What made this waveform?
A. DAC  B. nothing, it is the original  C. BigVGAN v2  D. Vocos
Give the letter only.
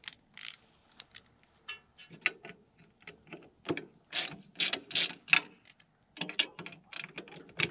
B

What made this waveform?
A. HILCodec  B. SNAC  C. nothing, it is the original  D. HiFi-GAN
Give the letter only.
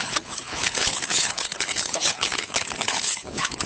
A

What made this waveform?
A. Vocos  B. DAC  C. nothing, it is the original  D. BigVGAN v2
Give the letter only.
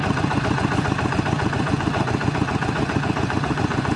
A